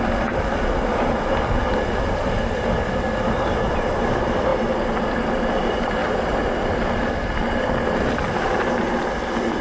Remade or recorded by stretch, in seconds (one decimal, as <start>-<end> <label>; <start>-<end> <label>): 0.0-9.6 recorded